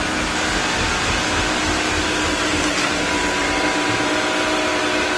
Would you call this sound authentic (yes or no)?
yes